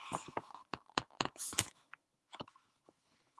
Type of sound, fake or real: fake